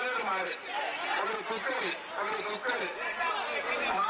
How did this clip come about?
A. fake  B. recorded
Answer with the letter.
B